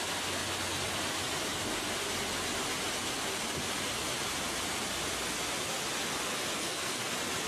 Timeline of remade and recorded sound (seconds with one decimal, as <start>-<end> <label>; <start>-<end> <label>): 0.0-6.6 recorded; 6.6-7.1 remade; 7.1-7.5 recorded